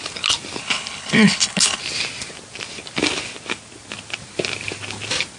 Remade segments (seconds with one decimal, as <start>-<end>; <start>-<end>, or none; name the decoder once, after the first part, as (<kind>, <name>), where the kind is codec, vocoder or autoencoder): 0.6-1.8 (codec, HILCodec)